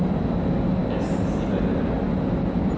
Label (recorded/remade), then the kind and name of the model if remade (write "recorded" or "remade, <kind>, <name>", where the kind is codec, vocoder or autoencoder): recorded